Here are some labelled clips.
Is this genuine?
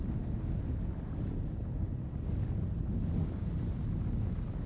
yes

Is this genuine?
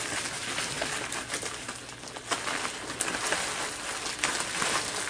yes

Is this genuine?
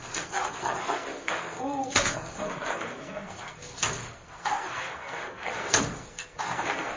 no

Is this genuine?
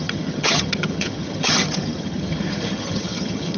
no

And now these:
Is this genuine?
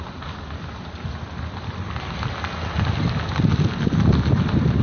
yes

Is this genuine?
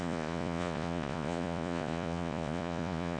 no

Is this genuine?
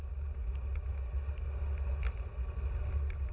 yes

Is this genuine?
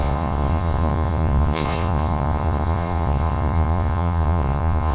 no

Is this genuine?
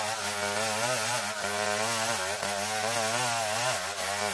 yes